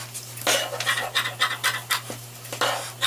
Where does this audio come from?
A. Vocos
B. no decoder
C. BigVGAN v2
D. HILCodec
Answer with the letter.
B